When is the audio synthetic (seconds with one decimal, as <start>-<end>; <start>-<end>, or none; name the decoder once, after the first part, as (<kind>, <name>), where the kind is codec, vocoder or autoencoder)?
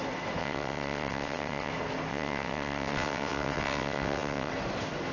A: 0.4-1.7 (vocoder, WaveNeXt); 2.1-4.5